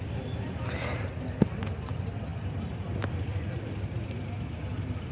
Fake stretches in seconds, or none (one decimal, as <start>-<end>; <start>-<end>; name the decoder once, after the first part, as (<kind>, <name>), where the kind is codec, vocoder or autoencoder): none